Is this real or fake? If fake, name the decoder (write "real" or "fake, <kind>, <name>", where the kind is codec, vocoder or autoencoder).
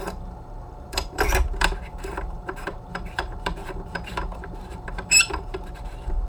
fake, vocoder, BigVGAN v2